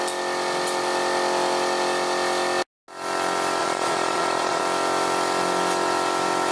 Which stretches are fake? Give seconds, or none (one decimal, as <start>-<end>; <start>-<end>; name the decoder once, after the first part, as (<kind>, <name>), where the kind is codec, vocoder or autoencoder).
3.6-4.6 (vocoder, Vocos)